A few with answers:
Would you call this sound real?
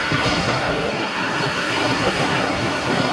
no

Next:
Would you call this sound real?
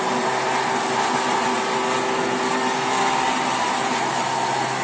yes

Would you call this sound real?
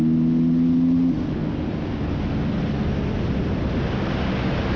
yes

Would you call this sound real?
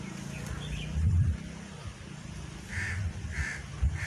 yes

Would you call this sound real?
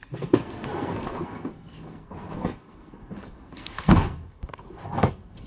no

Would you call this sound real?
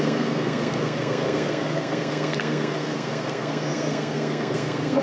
no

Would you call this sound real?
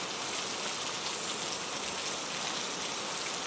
yes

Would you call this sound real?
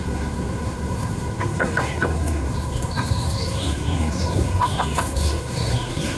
no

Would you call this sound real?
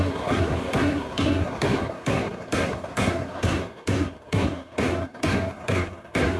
no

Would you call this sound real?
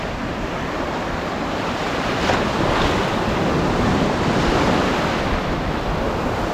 yes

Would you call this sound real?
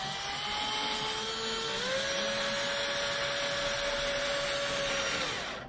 yes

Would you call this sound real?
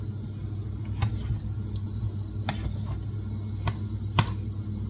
yes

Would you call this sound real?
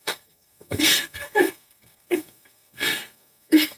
no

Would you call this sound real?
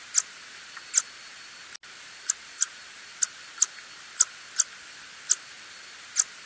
yes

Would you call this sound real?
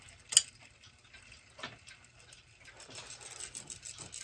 yes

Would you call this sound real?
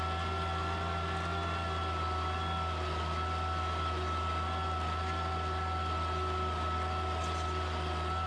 yes